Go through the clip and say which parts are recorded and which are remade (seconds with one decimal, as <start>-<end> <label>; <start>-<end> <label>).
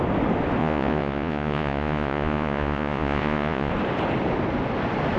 0.0-0.6 recorded; 0.6-3.7 remade; 3.7-5.2 recorded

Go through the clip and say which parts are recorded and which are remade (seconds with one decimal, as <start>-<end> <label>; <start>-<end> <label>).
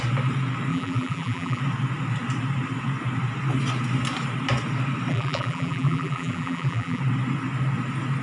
0.0-0.7 recorded; 0.7-1.6 remade; 1.6-5.1 recorded; 5.1-7.0 remade; 7.0-8.2 recorded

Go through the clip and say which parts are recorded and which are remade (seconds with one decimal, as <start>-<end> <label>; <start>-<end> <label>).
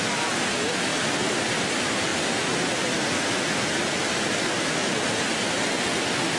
0.0-6.4 recorded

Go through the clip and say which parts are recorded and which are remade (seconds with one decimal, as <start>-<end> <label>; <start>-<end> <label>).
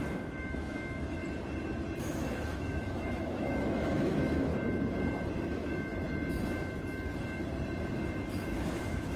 0.0-1.2 remade; 1.2-2.0 recorded; 2.0-4.5 remade; 4.5-5.4 recorded; 5.4-5.9 remade; 5.9-8.3 recorded; 8.3-9.2 remade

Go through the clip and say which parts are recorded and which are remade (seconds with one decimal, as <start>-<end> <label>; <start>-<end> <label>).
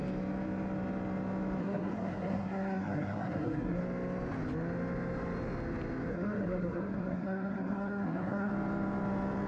0.0-1.6 recorded; 1.6-3.8 remade; 3.8-6.1 recorded; 6.1-8.5 remade; 8.5-9.5 recorded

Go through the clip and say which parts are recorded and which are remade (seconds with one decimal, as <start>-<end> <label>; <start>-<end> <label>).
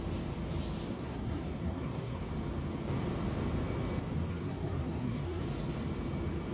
0.0-0.9 recorded; 0.9-2.2 remade; 2.2-4.3 recorded; 4.3-5.4 remade; 5.4-6.5 recorded